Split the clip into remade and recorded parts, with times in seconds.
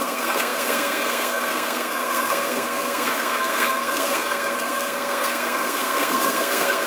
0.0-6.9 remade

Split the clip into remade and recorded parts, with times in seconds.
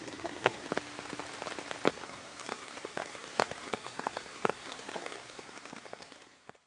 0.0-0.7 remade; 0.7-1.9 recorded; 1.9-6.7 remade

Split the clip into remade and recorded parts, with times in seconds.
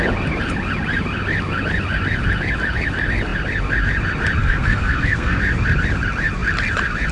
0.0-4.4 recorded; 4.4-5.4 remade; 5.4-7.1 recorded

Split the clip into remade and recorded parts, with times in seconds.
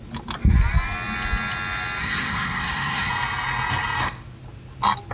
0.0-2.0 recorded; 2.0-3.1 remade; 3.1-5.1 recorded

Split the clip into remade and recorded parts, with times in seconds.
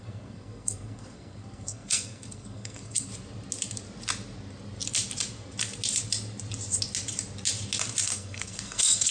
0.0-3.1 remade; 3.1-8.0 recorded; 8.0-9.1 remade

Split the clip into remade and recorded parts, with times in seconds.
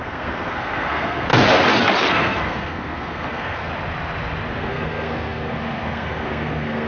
0.0-1.3 remade; 1.3-2.1 recorded; 2.1-3.7 remade; 3.7-4.5 recorded; 4.5-6.9 remade